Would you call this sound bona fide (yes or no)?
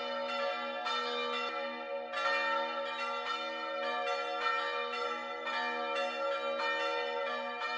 yes